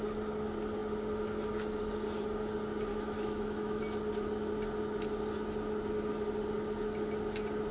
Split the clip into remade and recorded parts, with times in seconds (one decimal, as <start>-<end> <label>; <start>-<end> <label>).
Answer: 0.0-2.9 recorded; 2.9-3.8 remade; 3.8-7.7 recorded